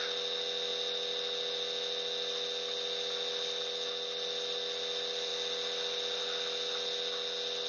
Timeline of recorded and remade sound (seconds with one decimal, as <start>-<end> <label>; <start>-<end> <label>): 0.0-7.7 recorded